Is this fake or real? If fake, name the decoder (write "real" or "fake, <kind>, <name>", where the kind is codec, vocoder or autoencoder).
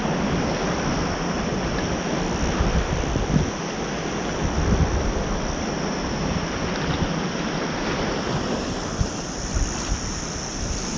real